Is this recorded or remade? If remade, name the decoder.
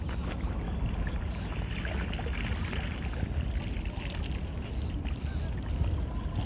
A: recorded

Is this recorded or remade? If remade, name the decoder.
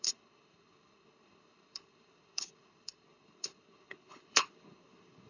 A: remade, codec, HILCodec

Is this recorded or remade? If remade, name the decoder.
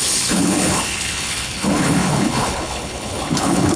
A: remade, codec, HILCodec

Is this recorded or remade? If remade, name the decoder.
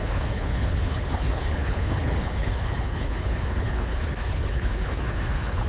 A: remade, codec, HILCodec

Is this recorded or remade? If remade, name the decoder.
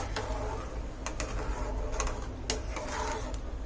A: recorded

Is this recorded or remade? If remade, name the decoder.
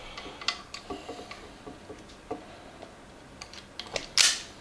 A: recorded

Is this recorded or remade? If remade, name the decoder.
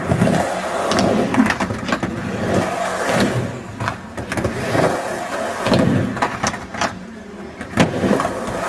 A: recorded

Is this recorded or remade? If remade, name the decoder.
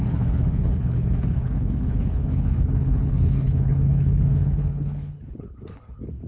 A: remade, codec, HILCodec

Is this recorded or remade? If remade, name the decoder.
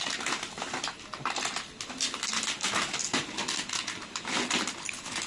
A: recorded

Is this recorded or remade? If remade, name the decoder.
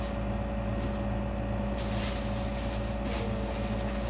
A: recorded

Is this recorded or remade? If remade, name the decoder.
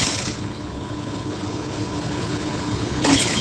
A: remade, codec, HILCodec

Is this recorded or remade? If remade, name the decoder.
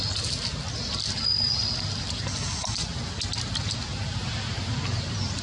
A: recorded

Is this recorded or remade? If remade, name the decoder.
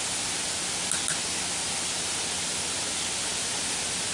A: recorded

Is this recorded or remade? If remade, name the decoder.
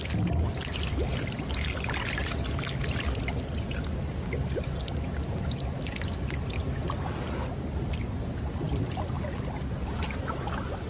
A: recorded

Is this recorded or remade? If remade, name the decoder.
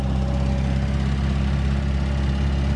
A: recorded